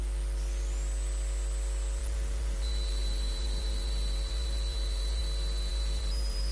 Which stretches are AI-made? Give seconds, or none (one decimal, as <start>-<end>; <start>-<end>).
2.0-5.2; 5.7-6.5